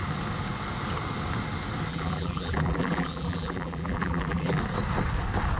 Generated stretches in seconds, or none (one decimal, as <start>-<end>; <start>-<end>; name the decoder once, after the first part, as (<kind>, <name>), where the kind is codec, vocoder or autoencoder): 1.9-4.6 (vocoder, BigVGAN v2)

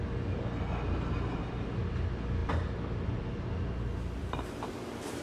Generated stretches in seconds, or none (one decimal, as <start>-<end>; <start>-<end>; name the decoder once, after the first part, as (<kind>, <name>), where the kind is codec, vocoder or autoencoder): 4.2-5.2 (vocoder, BigVGAN v2)

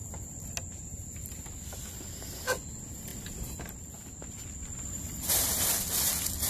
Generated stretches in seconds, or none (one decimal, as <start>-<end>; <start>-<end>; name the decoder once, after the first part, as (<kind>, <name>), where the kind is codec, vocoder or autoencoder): none

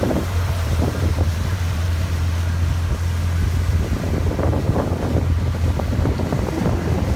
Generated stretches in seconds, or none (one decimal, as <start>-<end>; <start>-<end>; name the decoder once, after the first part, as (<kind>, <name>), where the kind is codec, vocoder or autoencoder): 0.0-2.3 (vocoder, BigVGAN v2)

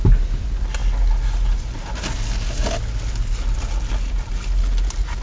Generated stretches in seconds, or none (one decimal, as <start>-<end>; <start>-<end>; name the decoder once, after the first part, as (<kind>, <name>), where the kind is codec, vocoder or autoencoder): none